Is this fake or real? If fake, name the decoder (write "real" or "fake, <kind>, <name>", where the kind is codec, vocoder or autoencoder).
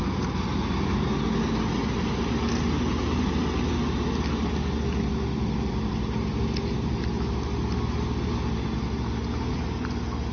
real